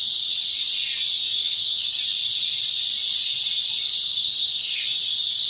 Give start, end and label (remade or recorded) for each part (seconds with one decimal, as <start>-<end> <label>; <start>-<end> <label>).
0.0-1.4 recorded; 1.4-2.0 remade; 2.0-4.1 recorded; 4.1-4.8 remade; 4.8-5.5 recorded